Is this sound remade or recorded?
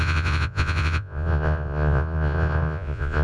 remade